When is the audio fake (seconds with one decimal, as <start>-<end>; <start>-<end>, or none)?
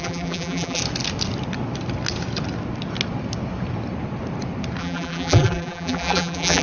0.0-0.8; 4.8-6.6